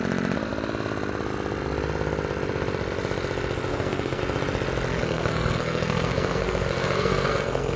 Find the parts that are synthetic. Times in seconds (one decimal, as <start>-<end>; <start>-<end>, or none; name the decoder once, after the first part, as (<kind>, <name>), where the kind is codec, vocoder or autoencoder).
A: 3.7-4.2 (codec, SNAC); 4.9-7.8